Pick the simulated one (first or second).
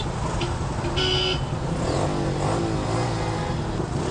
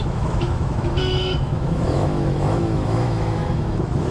second